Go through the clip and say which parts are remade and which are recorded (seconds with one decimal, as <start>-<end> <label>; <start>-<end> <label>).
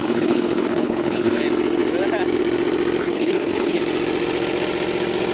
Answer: 0.0-1.4 remade; 1.4-3.0 recorded; 3.0-3.8 remade; 3.8-5.3 recorded